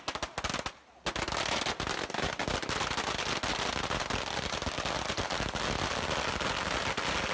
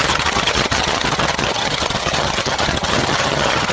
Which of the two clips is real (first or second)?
first